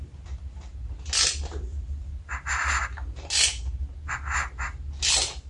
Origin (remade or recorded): recorded